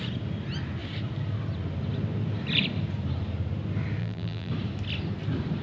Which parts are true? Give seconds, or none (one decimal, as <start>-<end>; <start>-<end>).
0.0-4.0; 4.5-5.6